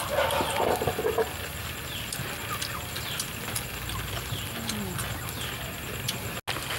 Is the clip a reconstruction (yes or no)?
no